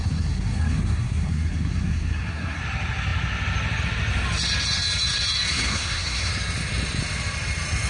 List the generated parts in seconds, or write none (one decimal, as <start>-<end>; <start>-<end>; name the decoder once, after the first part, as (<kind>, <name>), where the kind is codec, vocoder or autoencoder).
0.0-2.6 (codec, SNAC); 5.5-6.3